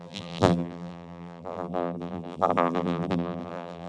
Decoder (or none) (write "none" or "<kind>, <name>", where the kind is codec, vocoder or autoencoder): vocoder, BigVGAN v2